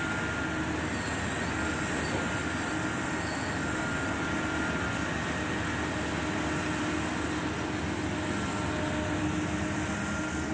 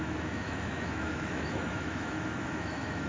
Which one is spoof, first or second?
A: second